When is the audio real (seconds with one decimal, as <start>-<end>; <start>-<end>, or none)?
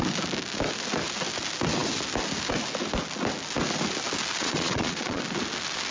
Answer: 0.0-4.4; 5.2-5.9